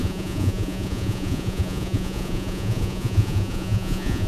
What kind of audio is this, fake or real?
fake